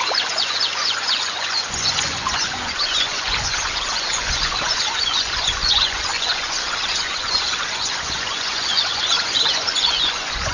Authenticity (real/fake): fake